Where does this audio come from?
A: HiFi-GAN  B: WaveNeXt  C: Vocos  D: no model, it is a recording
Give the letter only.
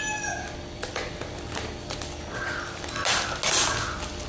D